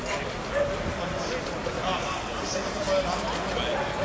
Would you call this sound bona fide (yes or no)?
yes